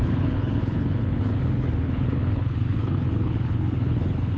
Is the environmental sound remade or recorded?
remade